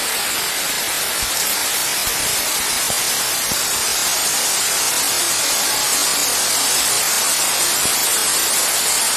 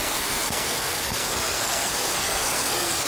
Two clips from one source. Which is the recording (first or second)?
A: first